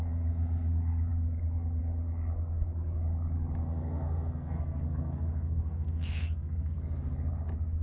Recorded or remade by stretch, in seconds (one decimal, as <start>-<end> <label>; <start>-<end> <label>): 0.0-3.6 recorded; 3.6-6.7 remade; 6.7-7.8 recorded